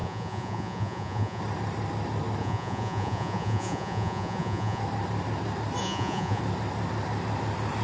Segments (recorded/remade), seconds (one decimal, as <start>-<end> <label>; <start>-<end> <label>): 0.0-1.4 remade; 1.4-2.4 recorded; 2.4-4.8 remade; 4.8-5.8 recorded; 5.8-6.4 remade; 6.4-7.8 recorded